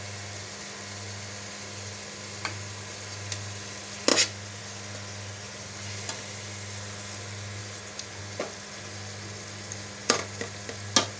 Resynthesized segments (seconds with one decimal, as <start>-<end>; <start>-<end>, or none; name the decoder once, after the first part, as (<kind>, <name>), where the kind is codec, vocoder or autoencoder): 7.6-8.2 (vocoder, BigVGAN v2)